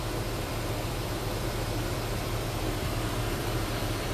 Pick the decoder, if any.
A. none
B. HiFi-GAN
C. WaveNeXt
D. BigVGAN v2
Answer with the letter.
D